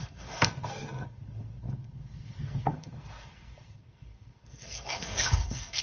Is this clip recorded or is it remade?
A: remade